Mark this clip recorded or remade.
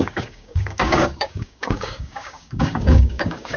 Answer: remade